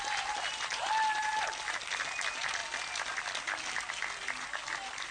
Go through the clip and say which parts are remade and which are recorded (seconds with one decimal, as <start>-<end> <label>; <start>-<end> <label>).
0.0-5.1 recorded